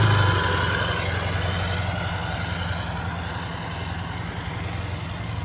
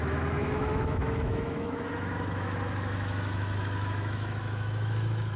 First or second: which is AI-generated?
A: second